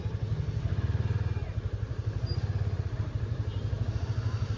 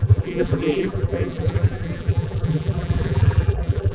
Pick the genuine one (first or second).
first